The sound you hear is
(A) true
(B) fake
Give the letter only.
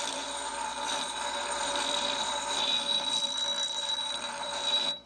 B